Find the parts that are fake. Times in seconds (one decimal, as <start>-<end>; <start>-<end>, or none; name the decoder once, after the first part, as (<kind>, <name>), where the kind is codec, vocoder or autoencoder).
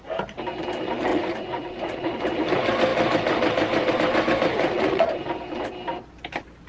1.1-2.2 (vocoder, Vocos); 4.5-5.1